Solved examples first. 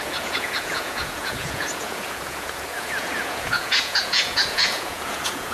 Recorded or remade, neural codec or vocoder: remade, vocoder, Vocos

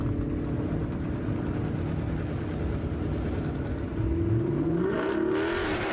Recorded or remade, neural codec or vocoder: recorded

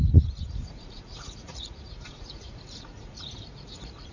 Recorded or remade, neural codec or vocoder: remade, vocoder, Vocos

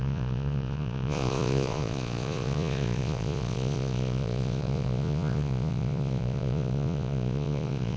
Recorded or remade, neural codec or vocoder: remade, vocoder, Vocos